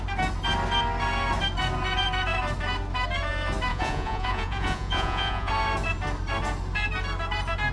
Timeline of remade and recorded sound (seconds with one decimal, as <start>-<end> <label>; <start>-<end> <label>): 0.0-3.7 recorded; 3.7-5.5 remade; 5.5-7.7 recorded